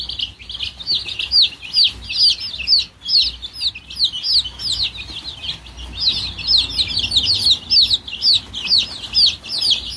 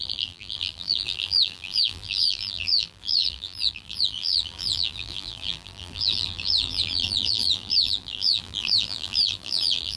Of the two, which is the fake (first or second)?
second